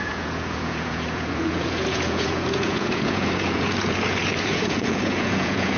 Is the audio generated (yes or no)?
yes